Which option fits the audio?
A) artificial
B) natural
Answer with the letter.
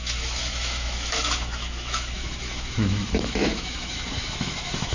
A